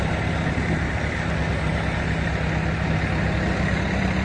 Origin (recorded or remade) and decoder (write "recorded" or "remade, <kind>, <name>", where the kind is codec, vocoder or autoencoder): recorded